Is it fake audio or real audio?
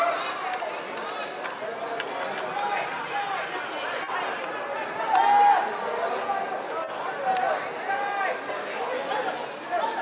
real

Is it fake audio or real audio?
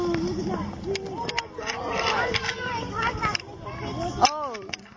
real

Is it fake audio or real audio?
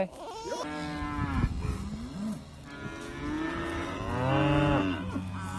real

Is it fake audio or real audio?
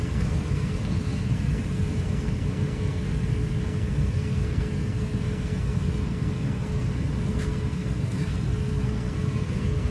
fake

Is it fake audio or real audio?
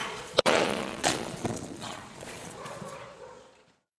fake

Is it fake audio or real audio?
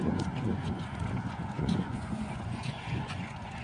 fake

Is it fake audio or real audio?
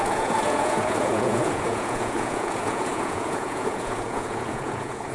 fake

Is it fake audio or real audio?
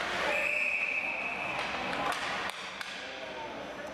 real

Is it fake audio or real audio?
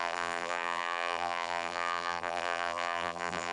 fake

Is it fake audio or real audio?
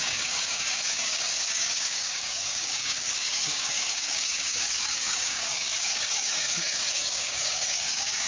fake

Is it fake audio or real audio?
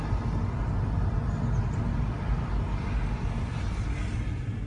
real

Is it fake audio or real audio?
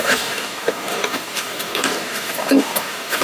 fake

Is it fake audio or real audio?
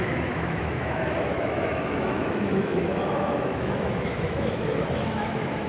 fake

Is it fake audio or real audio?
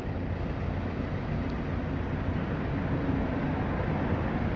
real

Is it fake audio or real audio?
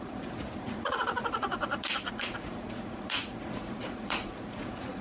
fake